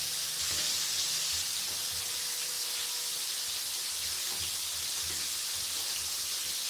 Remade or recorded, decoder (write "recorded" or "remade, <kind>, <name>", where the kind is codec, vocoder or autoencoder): recorded